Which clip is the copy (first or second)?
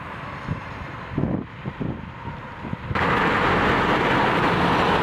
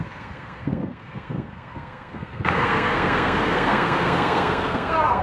second